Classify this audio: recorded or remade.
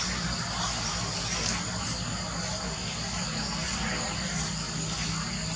recorded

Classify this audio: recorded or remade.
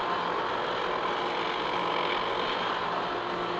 recorded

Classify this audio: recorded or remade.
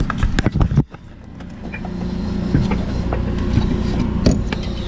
recorded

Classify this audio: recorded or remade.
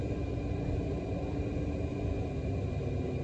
recorded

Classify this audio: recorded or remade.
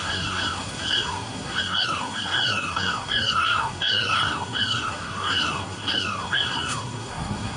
remade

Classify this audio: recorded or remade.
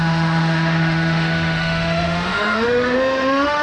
remade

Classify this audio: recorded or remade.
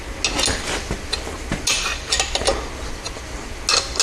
recorded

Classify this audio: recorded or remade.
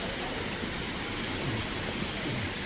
recorded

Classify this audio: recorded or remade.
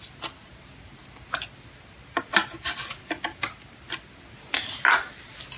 recorded